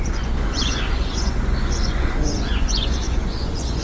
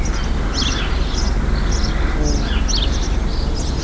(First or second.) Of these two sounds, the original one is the second